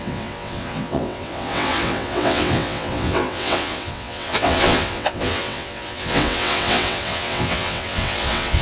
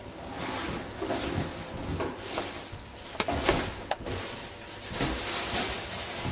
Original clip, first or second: second